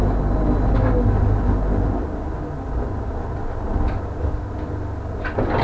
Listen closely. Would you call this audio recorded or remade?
recorded